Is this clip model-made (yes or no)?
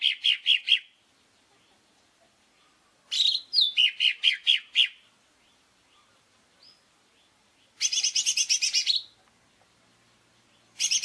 no